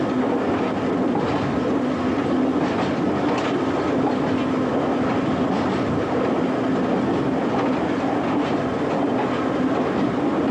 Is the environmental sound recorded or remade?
recorded